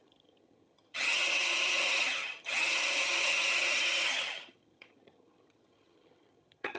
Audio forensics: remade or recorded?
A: remade